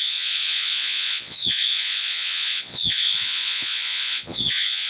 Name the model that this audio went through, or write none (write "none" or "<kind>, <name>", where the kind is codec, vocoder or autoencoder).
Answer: vocoder, Vocos